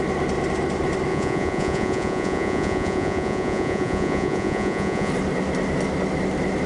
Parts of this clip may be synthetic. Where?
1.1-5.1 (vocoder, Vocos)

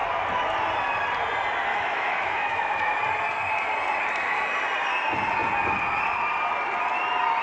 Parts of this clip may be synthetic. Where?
1.7-3.0 (autoencoder, DAC-VAE)

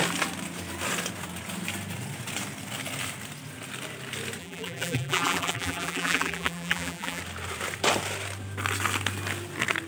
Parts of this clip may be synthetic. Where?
4.4-7.2 (vocoder, BigVGAN v2)

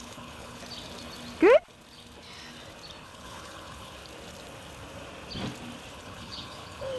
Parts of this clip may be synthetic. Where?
0.0-0.6 (codec, HILCodec); 3.0-4.0; 5.9-7.0

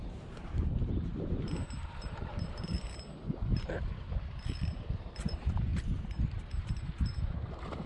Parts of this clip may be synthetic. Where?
0.0-7.9 (vocoder, BigVGAN v2)

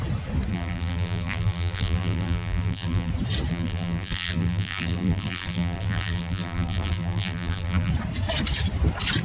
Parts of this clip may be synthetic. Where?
0.5-3.1 (vocoder, BigVGAN v2); 3.5-7.9

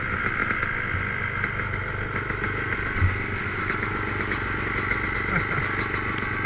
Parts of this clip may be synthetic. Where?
none

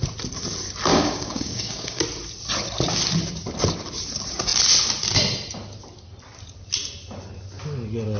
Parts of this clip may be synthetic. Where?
0.9-2.0 (codec, DAC)